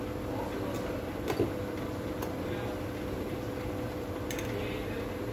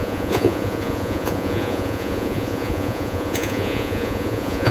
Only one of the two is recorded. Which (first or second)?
first